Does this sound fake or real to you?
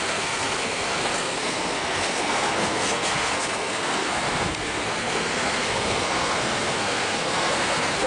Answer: fake